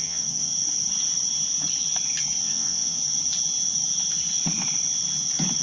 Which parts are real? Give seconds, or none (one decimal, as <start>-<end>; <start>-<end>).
0.5-2.4; 3.0-5.6